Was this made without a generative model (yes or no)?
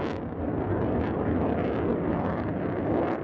yes